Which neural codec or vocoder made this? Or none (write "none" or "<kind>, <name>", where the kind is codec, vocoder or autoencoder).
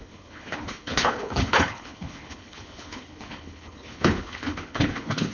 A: codec, HILCodec